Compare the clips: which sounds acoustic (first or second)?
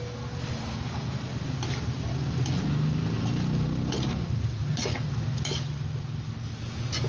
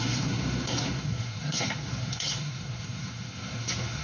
first